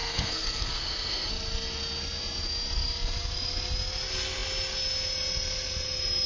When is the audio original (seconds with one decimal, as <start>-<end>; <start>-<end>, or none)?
1.3-6.3